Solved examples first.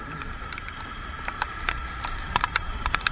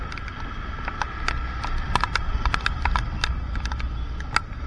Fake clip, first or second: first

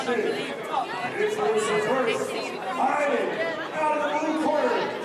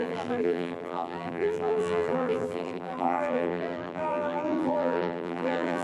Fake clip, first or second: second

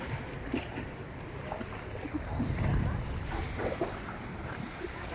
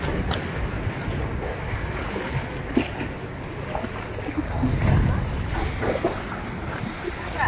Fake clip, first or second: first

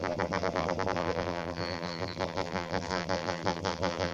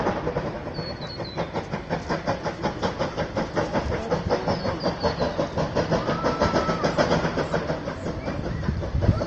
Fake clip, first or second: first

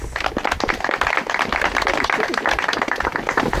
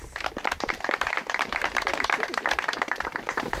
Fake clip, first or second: second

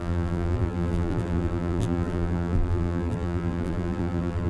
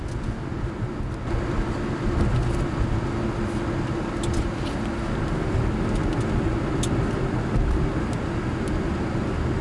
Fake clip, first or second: first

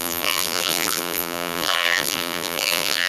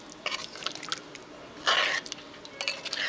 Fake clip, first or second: first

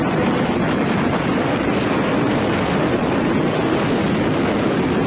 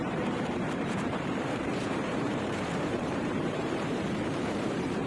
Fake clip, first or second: second